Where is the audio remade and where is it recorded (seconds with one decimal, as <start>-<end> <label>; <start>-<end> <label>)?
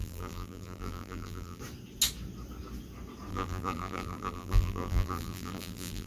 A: 0.0-1.6 remade; 1.6-3.3 recorded; 3.3-6.1 remade